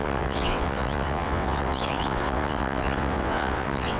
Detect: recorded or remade remade